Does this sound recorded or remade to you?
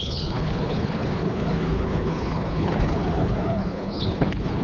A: remade